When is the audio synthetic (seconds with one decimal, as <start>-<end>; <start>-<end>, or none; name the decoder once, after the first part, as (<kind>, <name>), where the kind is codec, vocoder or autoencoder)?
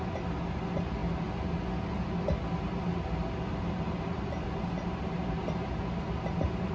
none